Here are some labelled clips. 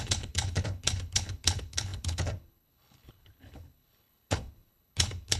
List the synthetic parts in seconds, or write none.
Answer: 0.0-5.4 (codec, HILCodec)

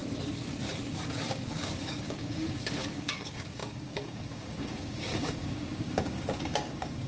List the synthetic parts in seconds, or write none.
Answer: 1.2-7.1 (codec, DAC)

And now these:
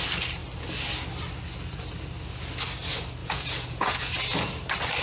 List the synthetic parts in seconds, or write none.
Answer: 3.2-4.1 (vocoder, Vocos)

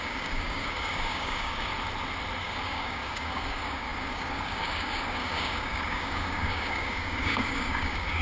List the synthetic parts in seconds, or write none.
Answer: 0.0-1.7 (codec, DAC); 2.4-8.2